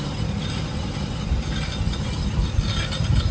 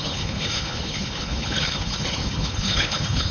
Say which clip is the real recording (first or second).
first